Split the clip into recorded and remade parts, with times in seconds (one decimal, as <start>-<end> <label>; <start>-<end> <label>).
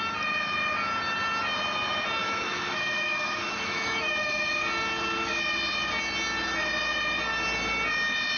0.0-2.2 recorded; 2.2-4.5 remade; 4.5-8.4 recorded